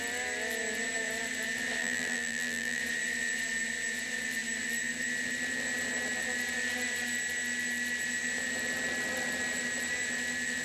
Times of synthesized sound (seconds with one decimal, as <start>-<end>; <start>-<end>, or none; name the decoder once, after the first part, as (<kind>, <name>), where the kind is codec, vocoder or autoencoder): 1.8-2.8 (vocoder, BigVGAN v2)